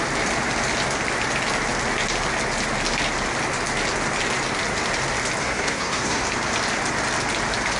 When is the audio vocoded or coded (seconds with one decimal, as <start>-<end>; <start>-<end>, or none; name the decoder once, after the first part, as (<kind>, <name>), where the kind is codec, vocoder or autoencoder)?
5.4-6.2 (codec, SNAC)